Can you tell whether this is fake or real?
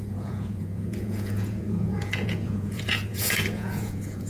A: fake